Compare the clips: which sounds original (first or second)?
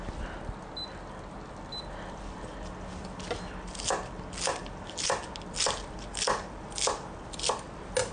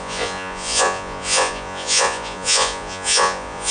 first